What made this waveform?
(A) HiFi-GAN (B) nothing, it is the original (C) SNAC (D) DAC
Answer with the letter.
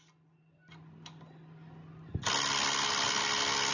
B